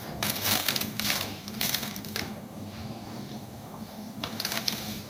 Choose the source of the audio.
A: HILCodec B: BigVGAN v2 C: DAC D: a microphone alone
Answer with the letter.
C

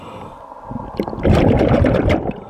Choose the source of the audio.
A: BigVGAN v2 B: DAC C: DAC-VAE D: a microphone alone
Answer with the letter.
D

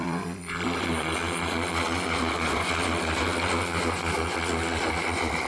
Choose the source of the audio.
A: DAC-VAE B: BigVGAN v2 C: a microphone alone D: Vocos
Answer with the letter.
D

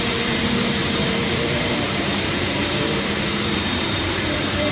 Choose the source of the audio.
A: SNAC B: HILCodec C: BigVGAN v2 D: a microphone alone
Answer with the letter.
C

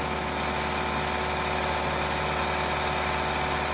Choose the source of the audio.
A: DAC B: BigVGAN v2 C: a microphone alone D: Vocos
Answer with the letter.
C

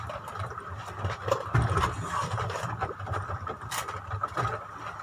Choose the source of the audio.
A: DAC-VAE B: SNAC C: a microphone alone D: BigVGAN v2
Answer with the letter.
C